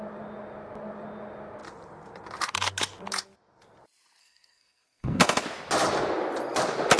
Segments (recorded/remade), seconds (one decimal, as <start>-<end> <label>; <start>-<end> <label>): 0.0-4.2 recorded; 4.2-5.4 remade; 5.4-7.0 recorded